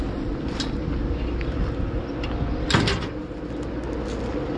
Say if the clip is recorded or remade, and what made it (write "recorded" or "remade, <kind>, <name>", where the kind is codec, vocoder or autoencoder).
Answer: recorded